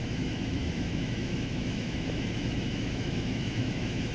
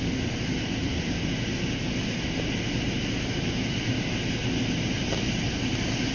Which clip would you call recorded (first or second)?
second